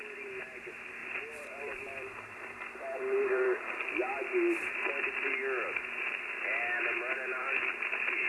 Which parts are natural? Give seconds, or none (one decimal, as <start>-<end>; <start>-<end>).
0.0-1.0; 4.9-8.3